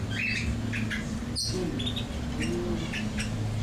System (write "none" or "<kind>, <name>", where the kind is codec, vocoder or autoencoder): none